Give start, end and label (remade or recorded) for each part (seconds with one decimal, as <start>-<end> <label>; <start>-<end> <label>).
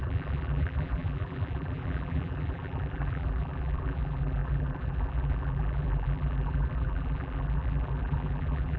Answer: 0.0-8.8 remade